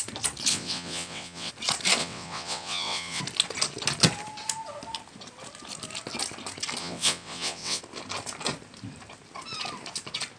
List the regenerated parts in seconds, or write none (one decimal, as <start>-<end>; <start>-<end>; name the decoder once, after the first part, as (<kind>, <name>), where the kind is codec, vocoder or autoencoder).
0.5-1.5 (vocoder, WaveNeXt); 2.0-3.2; 6.8-7.8